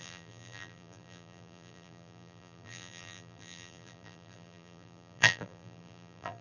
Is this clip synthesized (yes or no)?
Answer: yes